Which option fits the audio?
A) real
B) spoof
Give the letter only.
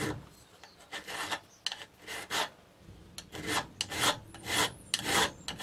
A